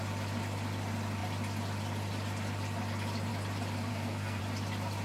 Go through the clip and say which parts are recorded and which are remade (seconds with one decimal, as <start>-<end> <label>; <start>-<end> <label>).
0.0-3.9 recorded; 3.9-4.4 remade; 4.4-5.0 recorded